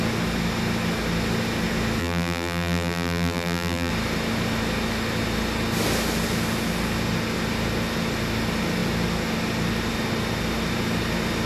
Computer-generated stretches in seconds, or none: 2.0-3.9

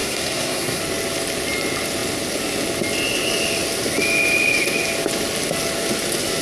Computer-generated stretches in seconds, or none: 0.0-0.8

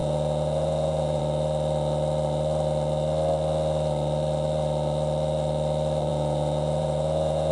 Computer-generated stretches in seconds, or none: 0.0-1.2; 6.1-7.5

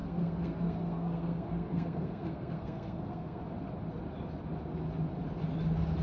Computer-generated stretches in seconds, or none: 0.0-3.4